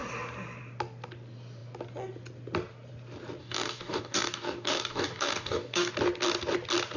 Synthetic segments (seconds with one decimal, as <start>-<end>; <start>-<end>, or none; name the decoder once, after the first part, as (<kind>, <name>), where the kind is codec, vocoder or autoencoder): 3.4-5.9 (codec, DAC)